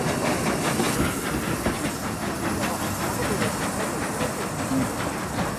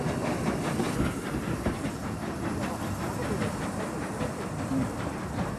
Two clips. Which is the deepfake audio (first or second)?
second